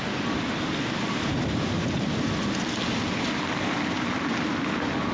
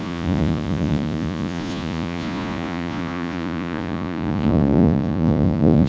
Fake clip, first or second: second